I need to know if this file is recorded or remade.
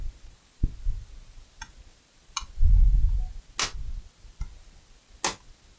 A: recorded